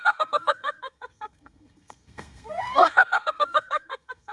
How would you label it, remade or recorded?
remade